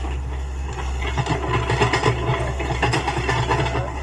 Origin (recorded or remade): recorded